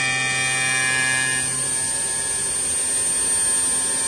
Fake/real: real